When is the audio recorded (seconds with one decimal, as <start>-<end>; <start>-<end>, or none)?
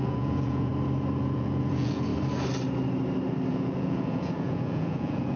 0.7-1.2; 2.1-3.5